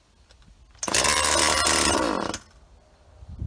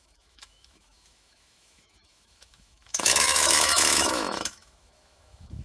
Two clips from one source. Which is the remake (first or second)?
second